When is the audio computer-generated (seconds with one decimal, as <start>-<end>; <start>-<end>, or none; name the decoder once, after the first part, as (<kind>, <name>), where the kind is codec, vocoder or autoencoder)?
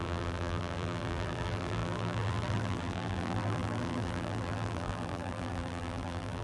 0.0-6.4 (vocoder, BigVGAN v2)